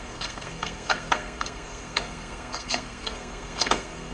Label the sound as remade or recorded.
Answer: remade